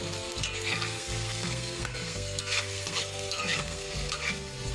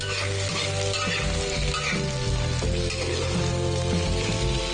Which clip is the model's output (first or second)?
first